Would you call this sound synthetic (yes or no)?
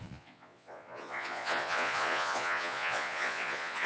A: yes